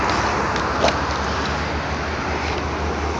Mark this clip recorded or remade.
recorded